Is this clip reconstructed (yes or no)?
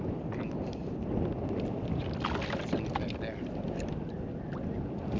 no